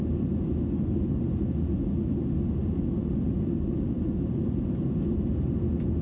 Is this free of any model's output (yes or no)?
yes